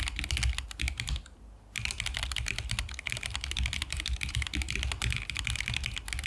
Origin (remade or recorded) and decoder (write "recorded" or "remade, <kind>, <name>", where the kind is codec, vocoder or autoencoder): recorded